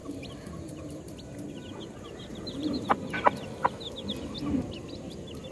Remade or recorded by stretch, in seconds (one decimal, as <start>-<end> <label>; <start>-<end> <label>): 0.0-1.0 remade; 1.0-2.3 recorded; 2.3-2.9 remade; 2.9-5.5 recorded